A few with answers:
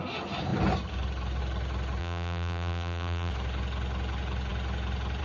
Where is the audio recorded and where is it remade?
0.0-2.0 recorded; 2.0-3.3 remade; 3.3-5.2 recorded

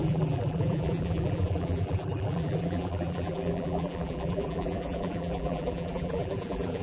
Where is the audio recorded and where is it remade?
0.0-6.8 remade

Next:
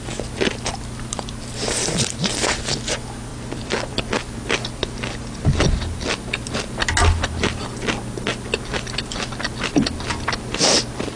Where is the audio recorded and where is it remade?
0.0-3.3 recorded; 3.3-4.0 remade; 4.0-4.8 recorded; 4.8-5.8 remade; 5.8-11.2 recorded

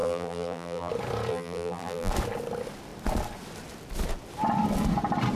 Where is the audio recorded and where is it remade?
0.0-0.9 remade; 0.9-1.3 recorded; 1.3-2.1 remade; 2.1-5.4 recorded

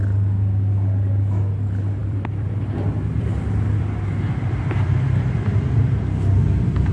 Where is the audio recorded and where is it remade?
0.0-2.0 recorded; 2.0-6.0 remade; 6.0-6.9 recorded

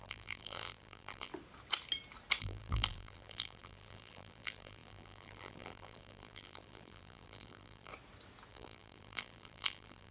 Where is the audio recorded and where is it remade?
0.0-1.3 remade; 1.3-2.4 recorded; 2.4-7.9 remade; 7.9-8.5 recorded; 8.5-10.1 remade

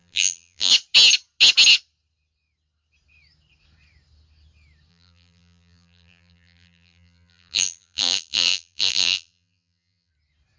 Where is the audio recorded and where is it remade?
0.0-0.7 remade; 0.7-4.9 recorded; 4.9-10.1 remade; 10.1-10.6 recorded